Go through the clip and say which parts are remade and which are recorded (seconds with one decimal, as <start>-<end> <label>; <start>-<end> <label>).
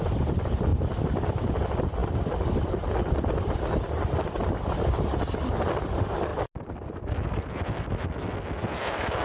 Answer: 0.0-9.2 recorded